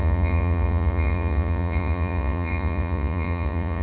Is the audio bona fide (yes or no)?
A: no